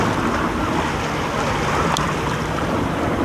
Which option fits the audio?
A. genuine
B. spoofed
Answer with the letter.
A